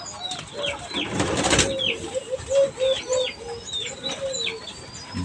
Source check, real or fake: real